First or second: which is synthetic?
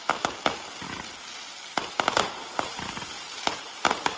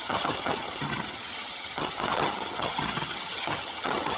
second